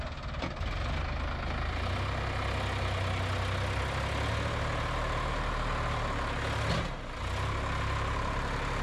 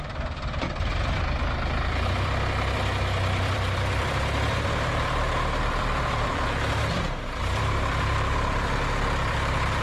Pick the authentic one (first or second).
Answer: first